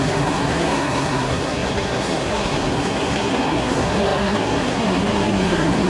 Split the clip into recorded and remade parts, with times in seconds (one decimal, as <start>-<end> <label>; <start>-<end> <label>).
0.0-5.9 remade